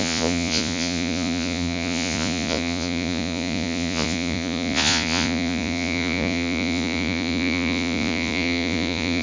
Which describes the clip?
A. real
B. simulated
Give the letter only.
B